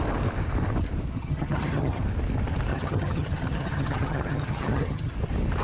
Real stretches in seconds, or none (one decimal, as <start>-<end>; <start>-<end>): 0.0-1.1; 2.0-2.7; 5.1-5.6